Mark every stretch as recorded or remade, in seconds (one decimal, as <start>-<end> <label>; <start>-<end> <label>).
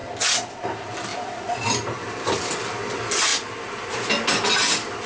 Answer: 0.0-1.1 recorded; 1.1-2.5 remade; 2.5-5.1 recorded